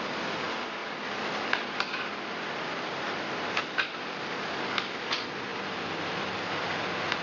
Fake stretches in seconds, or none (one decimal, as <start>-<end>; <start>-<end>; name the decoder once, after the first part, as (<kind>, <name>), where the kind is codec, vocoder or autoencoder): none